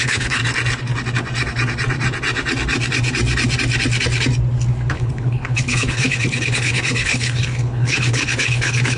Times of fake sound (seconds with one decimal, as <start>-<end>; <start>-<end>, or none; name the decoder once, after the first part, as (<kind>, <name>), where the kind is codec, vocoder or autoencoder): 0.0-0.4 (codec, HILCodec); 4.9-9.0